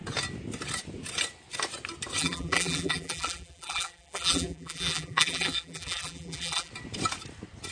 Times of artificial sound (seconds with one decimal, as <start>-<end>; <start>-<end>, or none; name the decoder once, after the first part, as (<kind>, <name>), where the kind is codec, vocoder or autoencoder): 2.2-6.7 (vocoder, BigVGAN v2)